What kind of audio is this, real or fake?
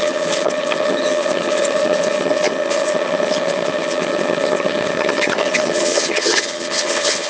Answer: fake